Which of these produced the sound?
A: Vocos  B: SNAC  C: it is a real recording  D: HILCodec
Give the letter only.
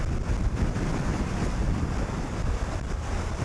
C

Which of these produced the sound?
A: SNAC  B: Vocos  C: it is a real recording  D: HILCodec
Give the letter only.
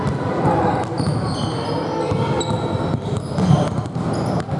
C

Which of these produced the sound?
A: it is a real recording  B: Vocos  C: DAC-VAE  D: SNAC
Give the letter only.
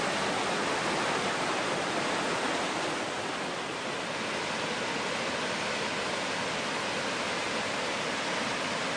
A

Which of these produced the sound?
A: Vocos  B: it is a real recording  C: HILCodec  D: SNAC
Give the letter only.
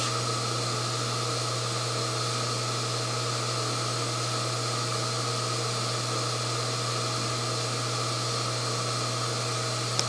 B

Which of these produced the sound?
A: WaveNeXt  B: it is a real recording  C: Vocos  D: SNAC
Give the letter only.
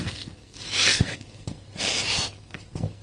D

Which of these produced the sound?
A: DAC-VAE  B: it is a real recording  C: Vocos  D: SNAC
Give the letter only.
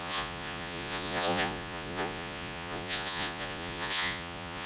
C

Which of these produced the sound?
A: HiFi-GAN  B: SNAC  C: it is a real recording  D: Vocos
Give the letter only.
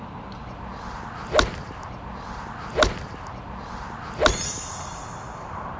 C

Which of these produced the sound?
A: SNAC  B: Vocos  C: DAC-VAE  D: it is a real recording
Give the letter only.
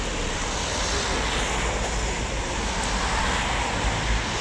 D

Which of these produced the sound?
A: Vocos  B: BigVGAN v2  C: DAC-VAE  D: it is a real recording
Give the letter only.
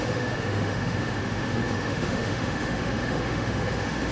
C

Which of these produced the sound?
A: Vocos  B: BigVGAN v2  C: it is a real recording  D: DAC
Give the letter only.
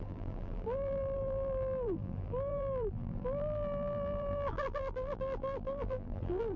B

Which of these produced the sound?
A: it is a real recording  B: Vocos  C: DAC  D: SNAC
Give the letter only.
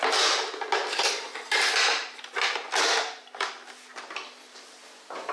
A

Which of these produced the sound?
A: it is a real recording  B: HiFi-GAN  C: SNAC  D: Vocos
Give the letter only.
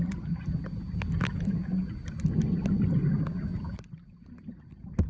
A